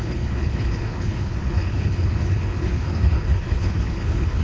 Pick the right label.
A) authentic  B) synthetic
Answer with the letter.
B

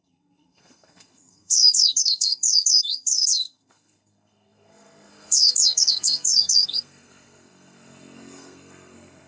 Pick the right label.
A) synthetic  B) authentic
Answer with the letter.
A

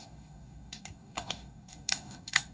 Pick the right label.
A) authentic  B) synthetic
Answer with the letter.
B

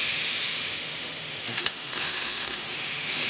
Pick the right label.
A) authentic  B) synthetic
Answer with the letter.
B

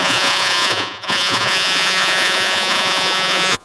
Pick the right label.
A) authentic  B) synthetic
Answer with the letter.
B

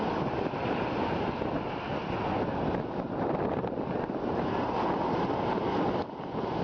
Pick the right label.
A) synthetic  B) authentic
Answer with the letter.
B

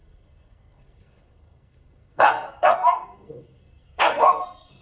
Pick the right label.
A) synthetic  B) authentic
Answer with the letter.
A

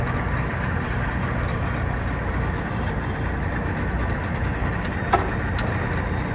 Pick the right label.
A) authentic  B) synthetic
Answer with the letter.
A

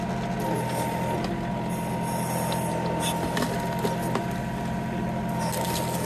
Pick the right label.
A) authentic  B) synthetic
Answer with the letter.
A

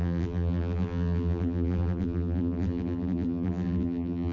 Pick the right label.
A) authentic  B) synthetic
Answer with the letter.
B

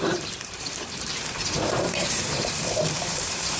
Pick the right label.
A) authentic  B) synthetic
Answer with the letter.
B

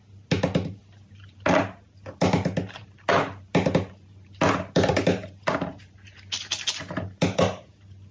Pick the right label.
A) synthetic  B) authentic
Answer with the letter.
B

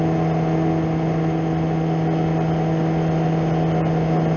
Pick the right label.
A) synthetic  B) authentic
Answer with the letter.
B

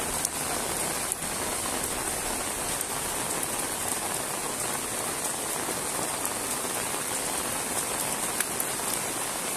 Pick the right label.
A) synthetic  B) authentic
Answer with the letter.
B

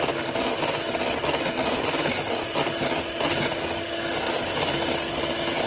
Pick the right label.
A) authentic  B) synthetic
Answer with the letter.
A